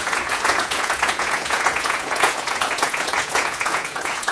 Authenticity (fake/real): fake